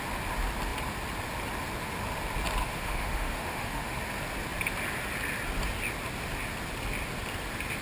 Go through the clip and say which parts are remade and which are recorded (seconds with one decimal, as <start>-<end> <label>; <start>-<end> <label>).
0.0-2.6 recorded; 2.6-4.0 remade; 4.0-7.8 recorded